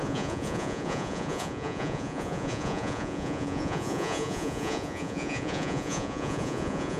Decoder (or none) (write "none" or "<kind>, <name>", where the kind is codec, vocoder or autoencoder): vocoder, Vocos